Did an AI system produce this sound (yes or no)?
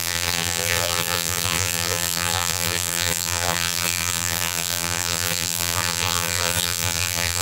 yes